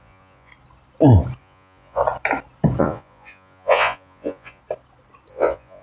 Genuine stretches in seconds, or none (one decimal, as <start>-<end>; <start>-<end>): 0.5-1.4; 2.0-2.8; 4.6-5.3